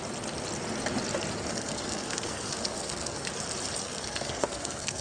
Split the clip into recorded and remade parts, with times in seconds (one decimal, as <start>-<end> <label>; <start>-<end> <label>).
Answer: 0.0-1.5 recorded; 1.5-3.3 remade; 3.3-3.8 recorded; 3.8-5.0 remade